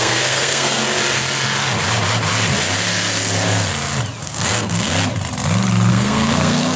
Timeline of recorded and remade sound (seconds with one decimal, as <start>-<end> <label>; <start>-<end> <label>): 0.0-0.8 remade; 0.8-4.2 recorded; 4.2-4.9 remade; 4.9-5.9 recorded; 5.9-6.8 remade